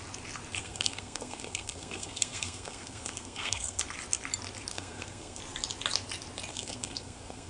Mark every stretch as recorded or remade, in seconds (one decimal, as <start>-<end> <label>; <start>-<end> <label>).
0.0-0.6 recorded; 0.6-3.8 remade; 3.8-4.7 recorded; 4.7-5.4 remade; 5.4-6.5 recorded; 6.5-7.5 remade